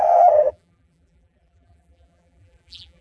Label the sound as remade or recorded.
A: remade